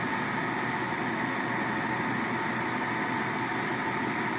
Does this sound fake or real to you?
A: real